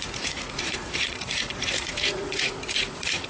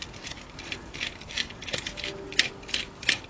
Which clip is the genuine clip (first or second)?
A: second